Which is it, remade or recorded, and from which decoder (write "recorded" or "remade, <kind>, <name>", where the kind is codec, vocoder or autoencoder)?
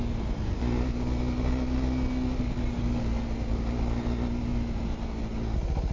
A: recorded